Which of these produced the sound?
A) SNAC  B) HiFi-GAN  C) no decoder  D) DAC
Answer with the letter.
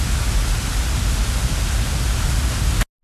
C